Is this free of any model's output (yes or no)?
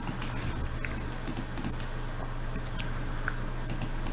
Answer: yes